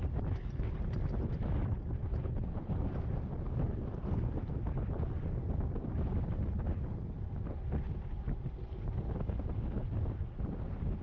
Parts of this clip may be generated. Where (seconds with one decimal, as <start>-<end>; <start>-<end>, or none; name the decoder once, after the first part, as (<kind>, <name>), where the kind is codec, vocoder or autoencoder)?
2.0-2.8 (codec, HILCodec)